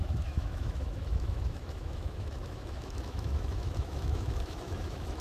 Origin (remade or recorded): remade